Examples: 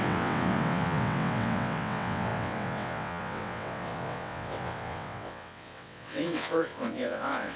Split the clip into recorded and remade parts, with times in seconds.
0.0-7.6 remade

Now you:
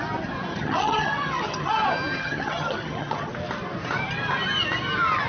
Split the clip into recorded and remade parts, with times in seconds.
0.0-0.5 recorded; 0.5-1.7 remade; 1.7-2.2 recorded; 2.2-3.3 remade; 3.3-5.3 recorded

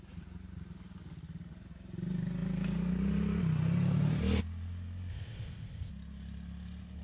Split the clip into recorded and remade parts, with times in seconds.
0.0-5.1 recorded; 5.1-5.9 remade; 5.9-7.0 recorded

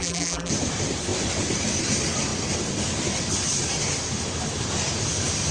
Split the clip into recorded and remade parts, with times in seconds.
0.0-0.5 remade; 0.5-5.5 recorded